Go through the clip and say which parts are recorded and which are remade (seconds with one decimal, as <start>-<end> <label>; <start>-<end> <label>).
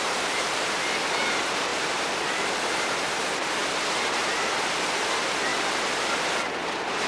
0.0-7.1 remade